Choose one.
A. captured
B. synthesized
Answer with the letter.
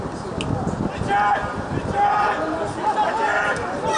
A